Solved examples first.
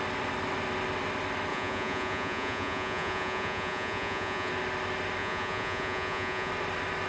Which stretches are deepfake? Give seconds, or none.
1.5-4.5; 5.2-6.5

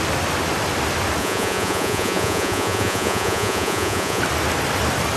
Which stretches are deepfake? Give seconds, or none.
1.2-4.2

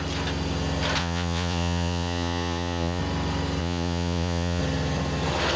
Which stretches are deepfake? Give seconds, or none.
1.0-3.0; 3.6-4.6

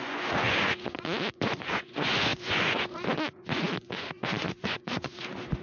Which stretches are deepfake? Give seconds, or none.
0.0-5.6

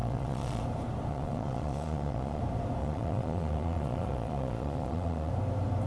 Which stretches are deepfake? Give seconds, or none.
0.0-0.6; 1.1-2.4; 2.8-5.3